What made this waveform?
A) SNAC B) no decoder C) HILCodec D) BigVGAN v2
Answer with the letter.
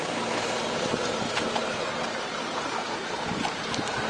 D